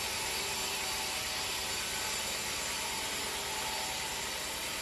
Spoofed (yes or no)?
no